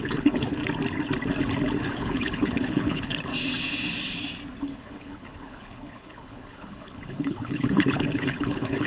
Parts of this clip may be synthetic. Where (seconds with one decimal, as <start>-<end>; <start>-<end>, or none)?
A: 0.0-0.6; 1.9-3.3; 4.6-8.9

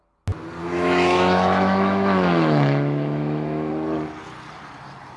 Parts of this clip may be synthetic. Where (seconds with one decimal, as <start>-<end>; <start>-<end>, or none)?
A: 0.6-3.7

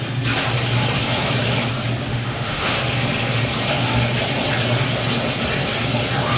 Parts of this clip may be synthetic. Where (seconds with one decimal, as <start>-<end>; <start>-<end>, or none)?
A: 2.1-2.8

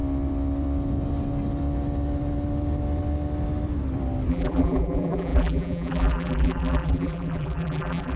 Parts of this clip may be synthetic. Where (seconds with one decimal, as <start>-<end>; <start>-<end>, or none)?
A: 4.3-8.2

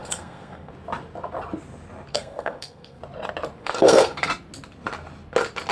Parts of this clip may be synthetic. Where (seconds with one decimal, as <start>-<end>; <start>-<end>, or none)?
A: 0.0-0.7; 2.1-3.0; 3.6-4.3

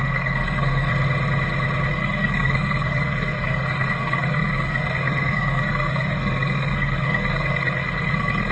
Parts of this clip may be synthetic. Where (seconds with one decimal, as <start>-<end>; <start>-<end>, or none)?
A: 0.0-0.9; 1.9-8.5

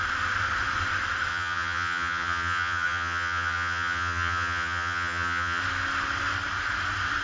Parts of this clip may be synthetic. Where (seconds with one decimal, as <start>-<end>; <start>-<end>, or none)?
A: 1.3-5.6